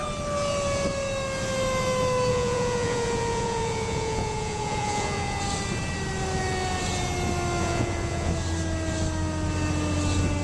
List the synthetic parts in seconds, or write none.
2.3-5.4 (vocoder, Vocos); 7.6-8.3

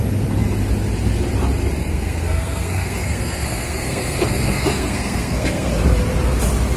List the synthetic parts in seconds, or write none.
1.9-5.7 (codec, SNAC)

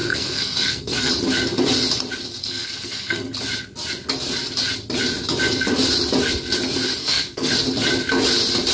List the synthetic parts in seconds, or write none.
0.0-1.1 (codec, SNAC); 2.4-3.3; 7.0-7.5

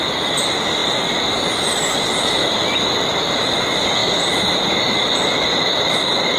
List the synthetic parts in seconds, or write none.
none